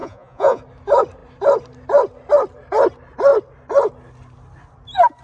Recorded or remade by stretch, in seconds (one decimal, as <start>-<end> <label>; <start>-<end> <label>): 0.0-0.6 remade; 0.6-5.2 recorded

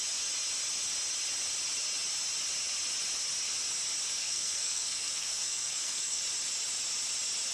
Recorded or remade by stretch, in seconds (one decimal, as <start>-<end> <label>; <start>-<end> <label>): 0.0-4.2 recorded; 4.2-6.2 remade; 6.2-7.5 recorded